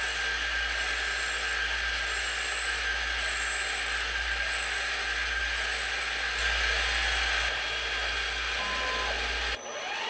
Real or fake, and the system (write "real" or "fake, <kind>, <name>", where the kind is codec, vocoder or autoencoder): real